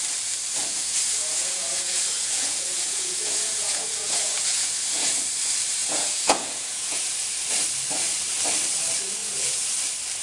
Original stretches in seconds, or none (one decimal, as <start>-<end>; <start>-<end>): 0.0-0.6; 5.2-5.8; 7.1-9.2; 9.7-10.2